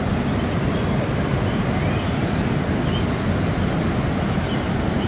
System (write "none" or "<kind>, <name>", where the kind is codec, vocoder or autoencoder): none